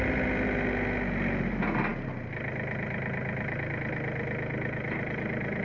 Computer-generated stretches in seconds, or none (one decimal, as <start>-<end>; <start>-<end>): none

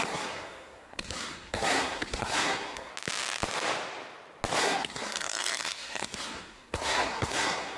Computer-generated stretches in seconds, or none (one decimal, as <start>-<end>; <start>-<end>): 0.0-2.9; 4.6-7.8

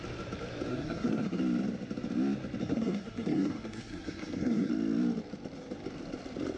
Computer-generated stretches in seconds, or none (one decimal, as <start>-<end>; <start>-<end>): 0.7-1.4; 2.6-4.7